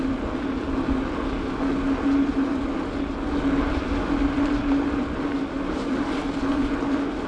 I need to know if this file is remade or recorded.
recorded